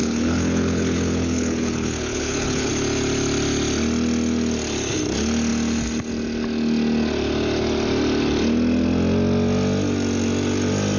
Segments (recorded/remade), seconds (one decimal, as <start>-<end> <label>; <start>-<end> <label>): 0.0-2.7 remade; 2.7-11.0 recorded